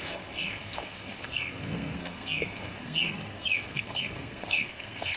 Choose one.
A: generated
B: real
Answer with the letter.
A